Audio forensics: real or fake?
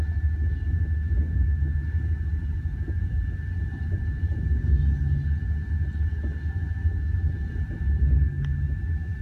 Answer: real